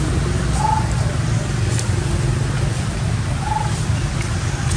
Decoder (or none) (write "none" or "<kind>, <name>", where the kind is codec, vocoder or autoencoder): none